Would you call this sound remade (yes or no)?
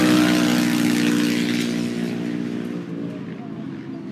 no